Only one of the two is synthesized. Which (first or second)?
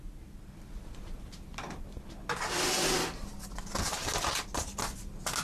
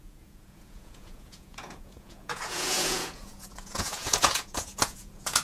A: second